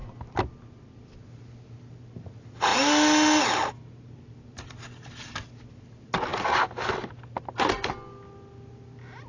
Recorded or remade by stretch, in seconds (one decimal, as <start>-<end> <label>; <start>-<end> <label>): 0.0-9.3 recorded